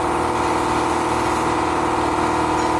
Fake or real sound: real